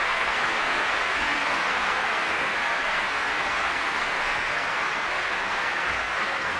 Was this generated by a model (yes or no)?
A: yes